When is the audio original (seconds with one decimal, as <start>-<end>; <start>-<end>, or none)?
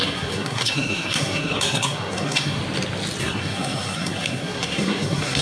2.6-3.2